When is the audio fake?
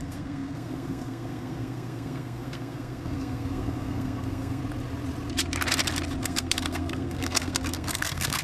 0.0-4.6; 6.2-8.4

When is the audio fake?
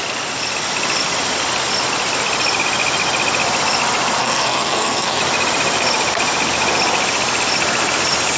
4.2-5.2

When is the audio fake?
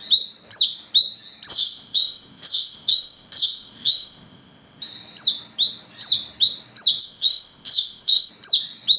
1.5-4.8; 7.0-8.3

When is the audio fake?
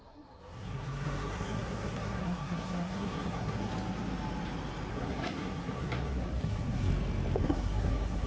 0.0-3.7; 4.9-6.9; 7.4-8.3